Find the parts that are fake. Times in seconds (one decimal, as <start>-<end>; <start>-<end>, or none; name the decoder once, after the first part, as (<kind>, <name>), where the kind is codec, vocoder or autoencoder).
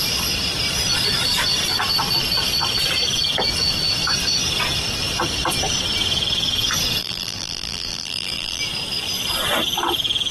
7.0-8.6 (vocoder, BigVGAN v2)